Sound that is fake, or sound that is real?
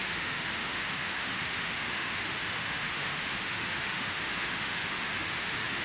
fake